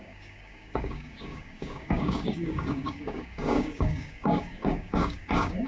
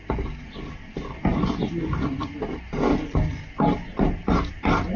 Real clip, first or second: second